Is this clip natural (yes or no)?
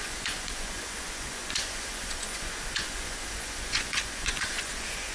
no